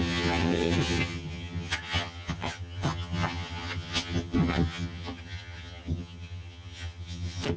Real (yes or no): no